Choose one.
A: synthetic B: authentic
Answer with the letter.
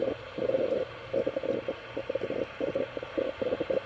B